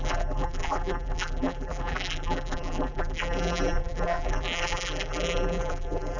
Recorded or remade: remade